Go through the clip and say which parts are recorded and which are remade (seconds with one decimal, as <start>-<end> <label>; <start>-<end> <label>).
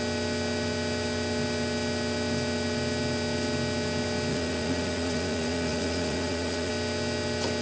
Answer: 0.0-4.3 recorded; 4.3-6.7 remade; 6.7-7.6 recorded